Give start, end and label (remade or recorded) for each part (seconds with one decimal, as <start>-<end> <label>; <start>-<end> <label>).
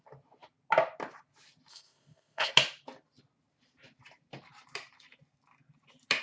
0.0-1.7 recorded; 1.7-2.5 remade; 2.5-6.2 recorded